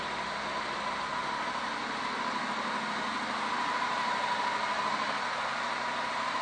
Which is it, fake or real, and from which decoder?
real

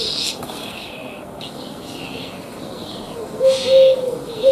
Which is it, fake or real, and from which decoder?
fake, codec, SNAC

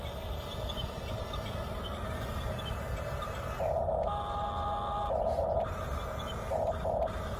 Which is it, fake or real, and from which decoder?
real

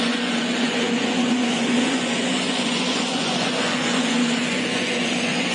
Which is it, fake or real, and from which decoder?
fake, vocoder, Vocos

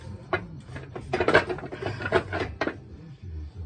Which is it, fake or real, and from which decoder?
real